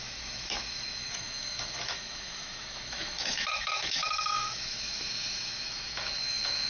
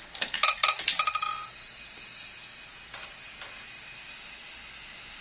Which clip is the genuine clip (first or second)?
second